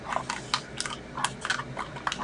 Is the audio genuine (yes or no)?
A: yes